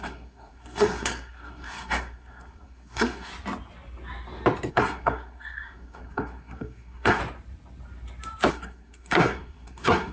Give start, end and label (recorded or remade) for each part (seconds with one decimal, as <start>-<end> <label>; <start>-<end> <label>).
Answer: 0.0-3.3 remade; 3.3-4.7 recorded; 4.7-7.2 remade; 7.2-8.5 recorded; 8.5-10.1 remade

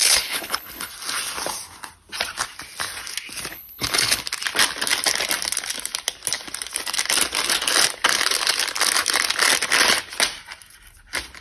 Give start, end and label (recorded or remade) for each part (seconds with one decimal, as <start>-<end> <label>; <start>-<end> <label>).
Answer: 0.0-0.9 remade; 0.9-3.5 recorded; 3.5-4.2 remade; 4.2-11.4 recorded